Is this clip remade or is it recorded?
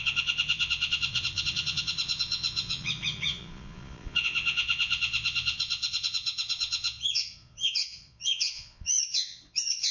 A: remade